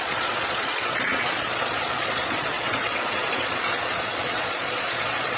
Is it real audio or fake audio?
fake